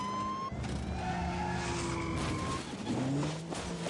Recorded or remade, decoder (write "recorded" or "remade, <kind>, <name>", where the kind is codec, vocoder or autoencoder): recorded